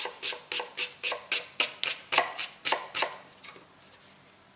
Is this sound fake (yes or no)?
no